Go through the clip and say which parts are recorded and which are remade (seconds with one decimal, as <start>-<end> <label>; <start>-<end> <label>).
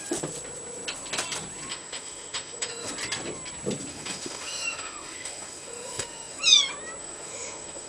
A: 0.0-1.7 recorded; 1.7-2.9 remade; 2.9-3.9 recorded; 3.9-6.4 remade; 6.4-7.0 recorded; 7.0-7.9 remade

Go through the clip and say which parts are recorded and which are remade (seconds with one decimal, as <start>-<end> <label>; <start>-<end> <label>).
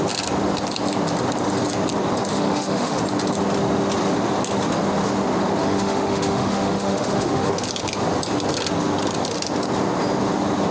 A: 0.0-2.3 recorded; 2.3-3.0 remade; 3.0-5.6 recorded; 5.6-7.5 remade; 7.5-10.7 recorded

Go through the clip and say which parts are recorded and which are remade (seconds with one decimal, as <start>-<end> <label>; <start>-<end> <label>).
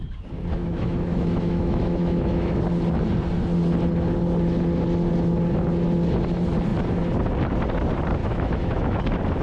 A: 0.0-0.6 recorded; 0.6-2.6 remade; 2.6-8.2 recorded; 8.2-9.0 remade; 9.0-9.4 recorded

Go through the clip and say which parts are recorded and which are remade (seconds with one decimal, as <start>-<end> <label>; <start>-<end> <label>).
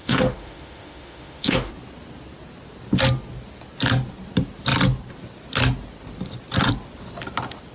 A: 0.0-1.7 remade; 1.7-7.7 recorded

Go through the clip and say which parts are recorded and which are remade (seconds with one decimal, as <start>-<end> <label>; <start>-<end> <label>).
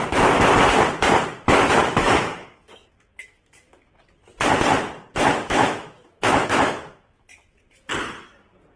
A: 0.0-1.8 recorded; 1.8-4.0 remade; 4.0-5.3 recorded; 5.3-7.9 remade; 7.9-8.8 recorded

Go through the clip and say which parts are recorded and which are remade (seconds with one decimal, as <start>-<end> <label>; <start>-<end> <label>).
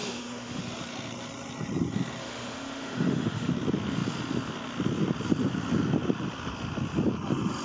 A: 0.0-0.6 remade; 0.6-2.2 recorded; 2.2-3.5 remade; 3.5-7.6 recorded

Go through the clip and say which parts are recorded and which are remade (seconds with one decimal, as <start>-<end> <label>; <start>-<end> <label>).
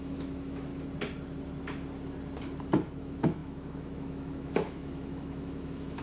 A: 0.0-0.7 remade; 0.7-3.0 recorded; 3.0-6.0 remade